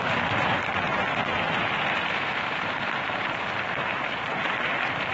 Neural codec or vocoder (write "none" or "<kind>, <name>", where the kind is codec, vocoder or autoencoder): vocoder, BigVGAN v2